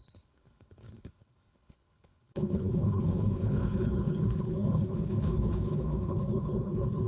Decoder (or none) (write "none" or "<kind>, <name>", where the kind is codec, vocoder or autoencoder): codec, HILCodec